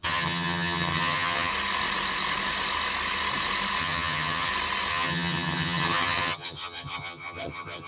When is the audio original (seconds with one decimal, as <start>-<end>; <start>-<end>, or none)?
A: 1.5-3.8; 4.5-4.9